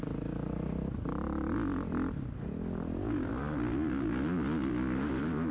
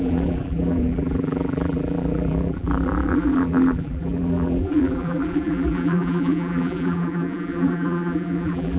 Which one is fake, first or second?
second